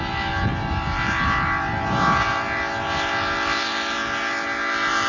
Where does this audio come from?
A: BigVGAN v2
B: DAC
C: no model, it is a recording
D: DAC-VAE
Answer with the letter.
C